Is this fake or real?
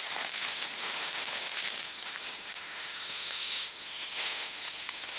fake